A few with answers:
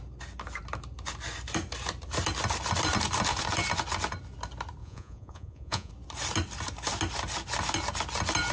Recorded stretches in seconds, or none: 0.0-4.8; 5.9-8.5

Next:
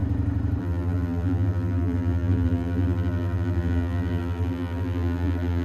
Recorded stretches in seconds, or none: 0.0-0.6

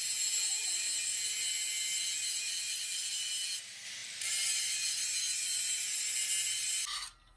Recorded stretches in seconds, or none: 0.0-7.4

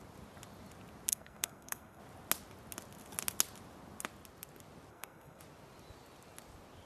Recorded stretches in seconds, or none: 0.0-1.1; 2.0-4.9; 5.4-6.9

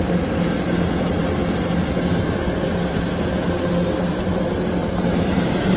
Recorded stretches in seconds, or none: 1.4-4.1

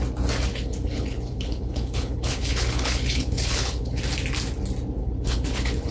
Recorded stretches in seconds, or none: 0.0-0.5; 4.0-5.0